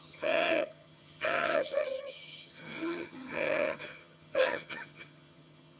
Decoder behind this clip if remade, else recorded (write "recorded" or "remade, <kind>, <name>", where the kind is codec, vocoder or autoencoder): remade, vocoder, HiFi-GAN